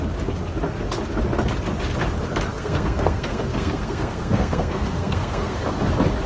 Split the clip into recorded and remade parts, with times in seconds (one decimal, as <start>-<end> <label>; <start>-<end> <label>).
0.0-2.5 recorded; 2.5-5.6 remade; 5.6-6.3 recorded